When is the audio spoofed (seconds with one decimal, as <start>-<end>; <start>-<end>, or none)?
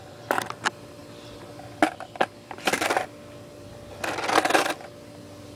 none